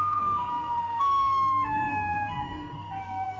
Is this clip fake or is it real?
fake